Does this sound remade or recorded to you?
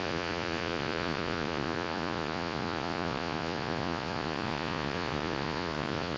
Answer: remade